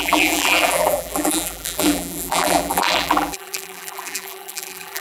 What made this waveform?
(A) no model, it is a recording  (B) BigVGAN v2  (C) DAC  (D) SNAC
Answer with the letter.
B